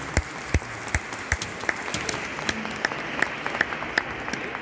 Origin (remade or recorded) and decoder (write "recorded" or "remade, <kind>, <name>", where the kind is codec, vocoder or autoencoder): recorded